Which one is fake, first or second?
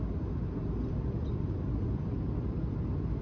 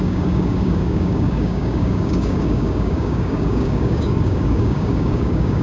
second